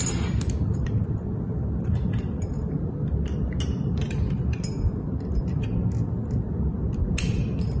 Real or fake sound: real